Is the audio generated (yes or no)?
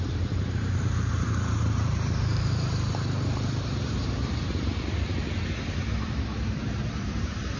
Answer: yes